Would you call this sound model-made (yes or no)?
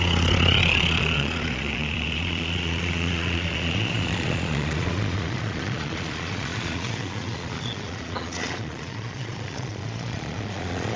yes